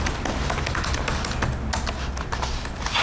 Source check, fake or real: real